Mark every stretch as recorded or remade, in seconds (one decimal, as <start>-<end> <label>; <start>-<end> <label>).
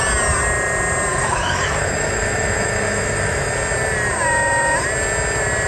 0.0-1.1 recorded; 1.1-3.5 remade; 3.5-5.7 recorded